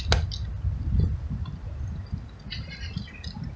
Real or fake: real